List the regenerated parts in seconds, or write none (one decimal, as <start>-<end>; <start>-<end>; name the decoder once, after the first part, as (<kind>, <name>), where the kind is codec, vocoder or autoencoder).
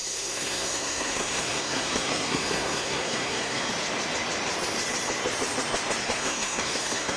0.0-3.7 (codec, SNAC); 6.0-7.2